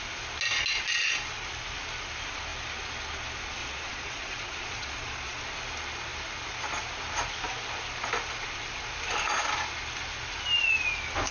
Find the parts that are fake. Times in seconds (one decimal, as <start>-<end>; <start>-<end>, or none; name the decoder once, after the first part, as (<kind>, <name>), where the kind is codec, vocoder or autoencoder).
3.6-5.4 (vocoder, Vocos)